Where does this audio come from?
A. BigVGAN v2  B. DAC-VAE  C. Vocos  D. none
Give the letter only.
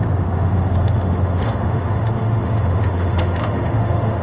B